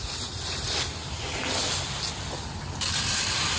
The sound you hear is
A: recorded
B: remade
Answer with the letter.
A